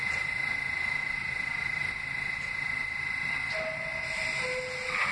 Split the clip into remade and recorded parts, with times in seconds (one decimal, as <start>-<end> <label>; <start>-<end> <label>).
0.0-5.1 recorded